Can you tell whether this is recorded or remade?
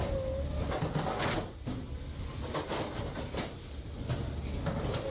recorded